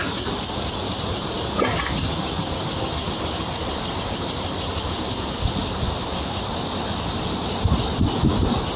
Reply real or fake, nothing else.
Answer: real